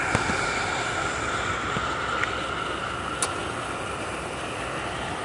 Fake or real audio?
real